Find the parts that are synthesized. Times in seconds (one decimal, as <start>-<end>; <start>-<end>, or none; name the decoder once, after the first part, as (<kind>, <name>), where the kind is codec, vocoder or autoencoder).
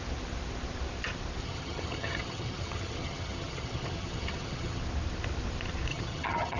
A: 1.4-4.8 (vocoder, HiFi-GAN); 5.9-6.6